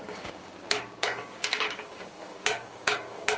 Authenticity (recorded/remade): remade